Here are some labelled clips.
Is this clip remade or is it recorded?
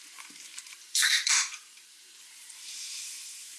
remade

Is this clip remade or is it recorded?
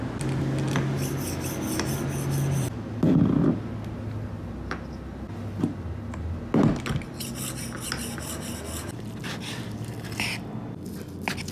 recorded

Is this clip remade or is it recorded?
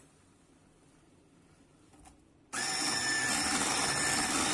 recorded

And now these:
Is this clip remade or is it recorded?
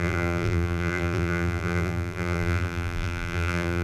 remade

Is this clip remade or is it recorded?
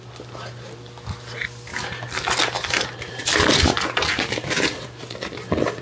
recorded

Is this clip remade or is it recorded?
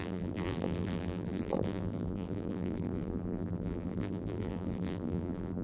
remade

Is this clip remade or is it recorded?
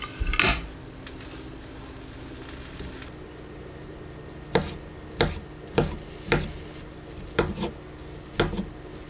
recorded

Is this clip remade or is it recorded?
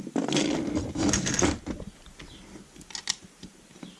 recorded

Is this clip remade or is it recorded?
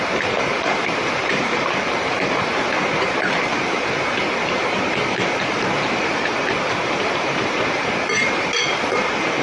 remade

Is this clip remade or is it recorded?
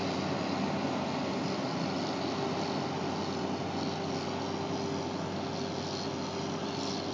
recorded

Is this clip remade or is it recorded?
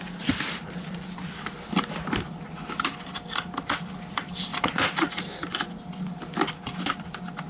remade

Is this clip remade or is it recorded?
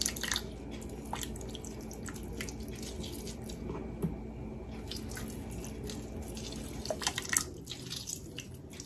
recorded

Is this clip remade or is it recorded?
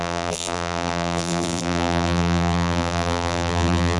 remade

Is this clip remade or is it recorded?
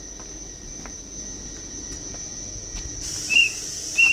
recorded